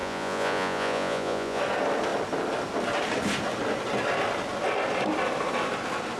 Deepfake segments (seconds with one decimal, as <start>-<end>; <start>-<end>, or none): 0.0-1.6